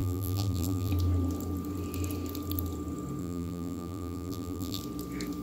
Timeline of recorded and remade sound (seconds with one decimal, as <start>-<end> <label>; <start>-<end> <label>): 0.0-0.9 remade; 0.9-3.2 recorded; 3.2-4.8 remade; 4.8-5.4 recorded